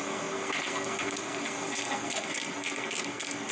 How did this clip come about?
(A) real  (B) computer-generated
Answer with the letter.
B